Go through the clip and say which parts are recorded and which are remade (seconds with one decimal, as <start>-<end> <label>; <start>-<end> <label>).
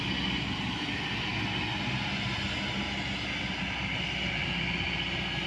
0.0-5.5 recorded